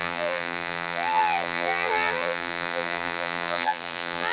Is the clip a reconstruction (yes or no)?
yes